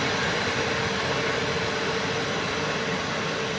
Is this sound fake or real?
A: real